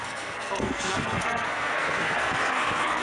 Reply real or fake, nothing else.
fake